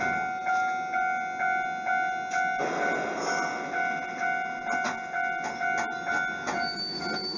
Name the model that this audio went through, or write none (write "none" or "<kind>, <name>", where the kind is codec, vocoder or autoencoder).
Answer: none